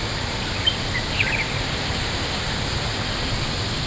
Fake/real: real